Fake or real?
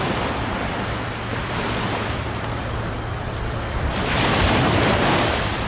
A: fake